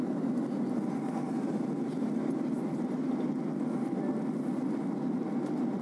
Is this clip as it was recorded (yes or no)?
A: yes